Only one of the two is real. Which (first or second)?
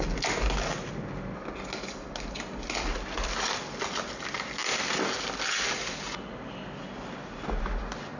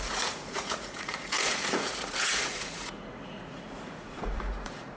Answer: first